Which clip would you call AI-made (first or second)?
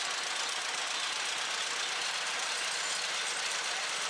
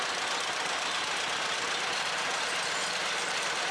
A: second